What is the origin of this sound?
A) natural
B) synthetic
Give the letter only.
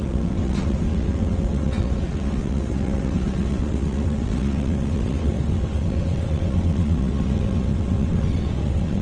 B